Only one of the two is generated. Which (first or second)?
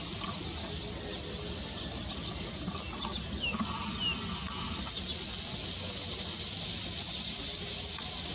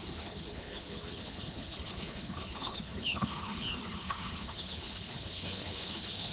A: second